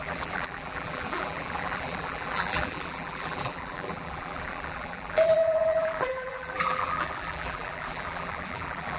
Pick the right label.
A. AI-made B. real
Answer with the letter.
A